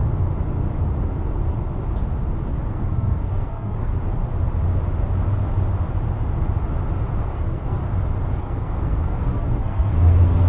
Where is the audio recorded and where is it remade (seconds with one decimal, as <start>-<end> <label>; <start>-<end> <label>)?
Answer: 0.0-2.7 recorded; 2.7-3.9 remade; 3.9-7.2 recorded; 7.2-7.8 remade; 7.8-8.4 recorded; 8.4-10.5 remade